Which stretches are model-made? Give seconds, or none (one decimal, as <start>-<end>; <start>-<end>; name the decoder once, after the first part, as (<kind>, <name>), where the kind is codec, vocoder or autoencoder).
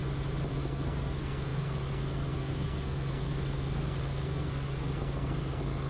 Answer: 0.5-5.9 (codec, SNAC)